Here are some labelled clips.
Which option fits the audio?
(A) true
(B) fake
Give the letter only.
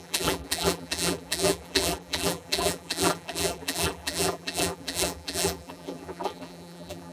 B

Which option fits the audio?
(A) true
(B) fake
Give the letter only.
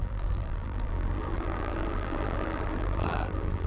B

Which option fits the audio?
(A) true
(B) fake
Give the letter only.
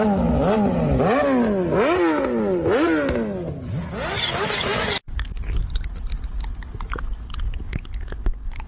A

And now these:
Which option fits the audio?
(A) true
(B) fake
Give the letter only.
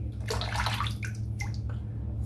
A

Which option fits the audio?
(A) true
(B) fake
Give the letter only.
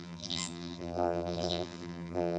B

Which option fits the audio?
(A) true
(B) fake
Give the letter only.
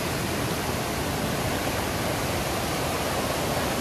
B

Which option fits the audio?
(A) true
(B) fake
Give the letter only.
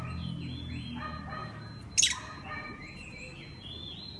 A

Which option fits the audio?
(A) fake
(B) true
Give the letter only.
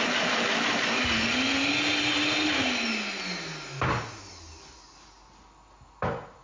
B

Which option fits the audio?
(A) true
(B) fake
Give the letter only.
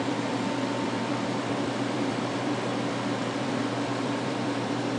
B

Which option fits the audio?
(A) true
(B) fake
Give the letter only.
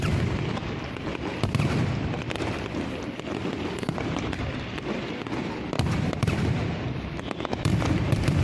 B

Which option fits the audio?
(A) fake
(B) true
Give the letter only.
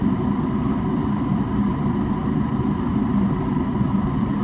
A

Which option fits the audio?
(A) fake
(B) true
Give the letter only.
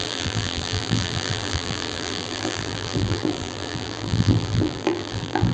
A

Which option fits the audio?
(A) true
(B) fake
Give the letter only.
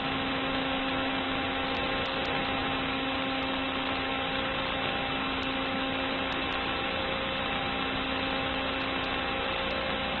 A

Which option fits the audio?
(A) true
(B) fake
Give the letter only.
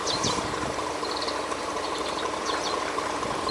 B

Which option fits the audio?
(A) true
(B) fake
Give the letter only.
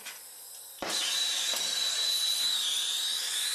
A